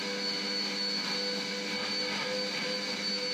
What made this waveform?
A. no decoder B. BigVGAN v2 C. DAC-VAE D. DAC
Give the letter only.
A